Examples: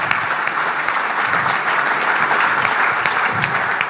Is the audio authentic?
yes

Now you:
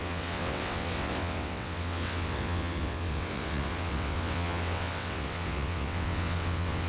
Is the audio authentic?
no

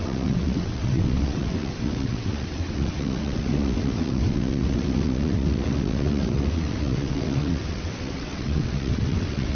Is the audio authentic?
no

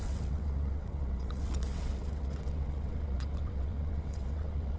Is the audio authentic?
no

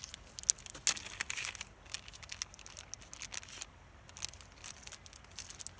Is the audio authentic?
yes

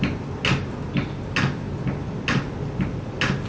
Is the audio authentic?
yes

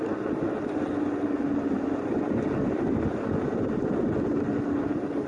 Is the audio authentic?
yes